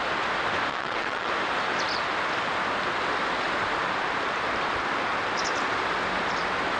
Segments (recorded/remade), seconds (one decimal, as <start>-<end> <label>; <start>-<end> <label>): 0.0-0.7 recorded; 0.7-1.3 remade; 1.3-6.8 recorded